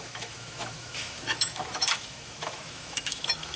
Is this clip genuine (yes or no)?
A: no